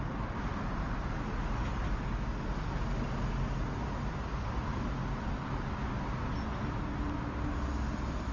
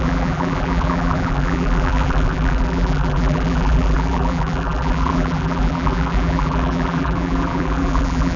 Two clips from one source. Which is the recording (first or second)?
first